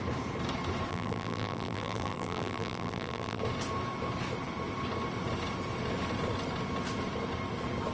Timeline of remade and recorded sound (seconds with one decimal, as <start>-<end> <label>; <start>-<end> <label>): 0.0-0.9 recorded; 0.9-3.4 remade; 3.4-7.9 recorded